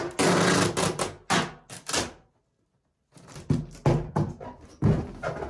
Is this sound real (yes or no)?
yes